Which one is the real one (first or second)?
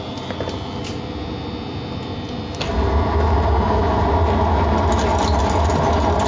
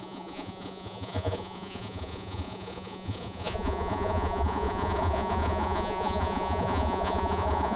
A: first